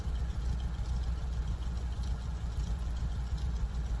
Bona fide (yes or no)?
no